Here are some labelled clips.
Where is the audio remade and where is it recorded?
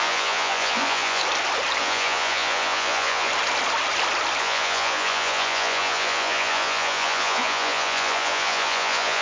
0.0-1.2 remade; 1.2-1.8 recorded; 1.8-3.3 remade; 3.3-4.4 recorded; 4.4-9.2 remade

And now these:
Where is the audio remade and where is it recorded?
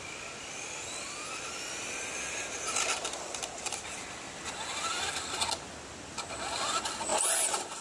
0.0-7.8 recorded